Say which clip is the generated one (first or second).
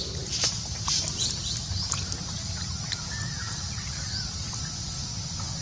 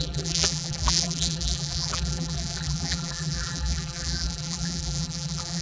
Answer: second